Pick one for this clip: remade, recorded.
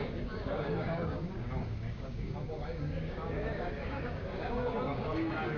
remade